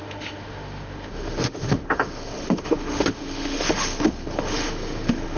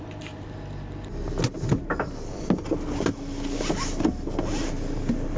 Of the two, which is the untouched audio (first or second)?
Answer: second